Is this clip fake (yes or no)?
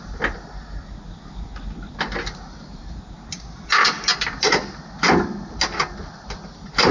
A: no